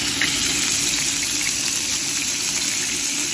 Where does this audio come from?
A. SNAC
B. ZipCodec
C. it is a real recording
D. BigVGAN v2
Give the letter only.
C